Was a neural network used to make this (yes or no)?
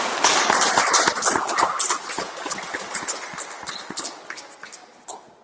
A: no